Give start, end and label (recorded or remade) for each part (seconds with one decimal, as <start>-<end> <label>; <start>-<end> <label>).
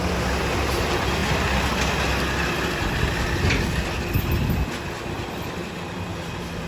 0.0-5.6 recorded; 5.6-6.7 remade